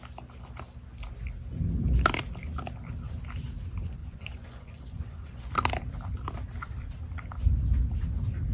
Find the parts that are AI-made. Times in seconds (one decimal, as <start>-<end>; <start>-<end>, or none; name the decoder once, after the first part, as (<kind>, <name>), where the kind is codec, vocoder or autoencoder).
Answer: 4.0-5.5 (vocoder, Vocos)